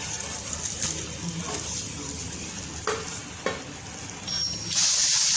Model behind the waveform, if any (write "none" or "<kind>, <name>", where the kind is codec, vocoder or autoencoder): none